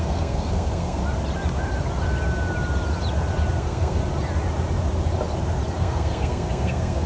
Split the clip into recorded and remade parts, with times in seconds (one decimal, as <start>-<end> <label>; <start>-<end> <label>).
0.0-1.0 remade; 1.0-3.6 recorded; 3.6-4.0 remade; 4.0-5.8 recorded; 5.8-7.1 remade